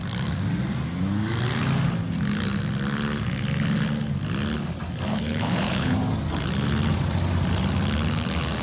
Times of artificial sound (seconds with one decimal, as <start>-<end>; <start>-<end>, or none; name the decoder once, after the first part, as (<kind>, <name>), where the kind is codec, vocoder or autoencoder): 5.1-6.0 (codec, HILCodec)

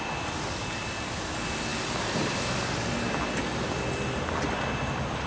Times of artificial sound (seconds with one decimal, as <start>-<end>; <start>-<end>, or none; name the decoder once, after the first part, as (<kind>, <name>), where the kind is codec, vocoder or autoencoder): none

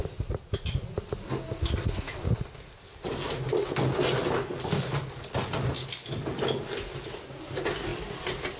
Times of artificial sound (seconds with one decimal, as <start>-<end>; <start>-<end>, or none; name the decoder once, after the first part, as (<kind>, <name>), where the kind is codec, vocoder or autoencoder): none

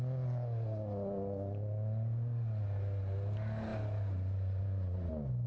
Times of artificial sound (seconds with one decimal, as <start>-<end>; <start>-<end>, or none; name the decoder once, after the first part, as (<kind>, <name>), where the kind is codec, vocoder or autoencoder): none

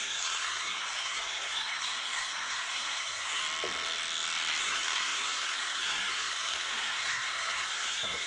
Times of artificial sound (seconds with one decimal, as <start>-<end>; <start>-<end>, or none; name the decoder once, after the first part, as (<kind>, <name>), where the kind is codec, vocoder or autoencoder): 0.0-3.4 (codec, SNAC); 4.6-8.3